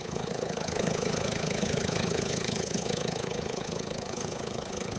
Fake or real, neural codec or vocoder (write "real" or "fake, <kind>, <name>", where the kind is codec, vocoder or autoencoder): fake, codec, HILCodec